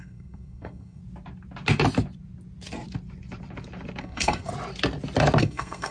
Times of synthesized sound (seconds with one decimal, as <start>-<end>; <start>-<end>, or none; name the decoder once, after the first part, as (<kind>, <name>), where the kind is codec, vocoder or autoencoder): 0.0-1.0 (codec, SNAC); 4.0-4.5; 5.4-5.9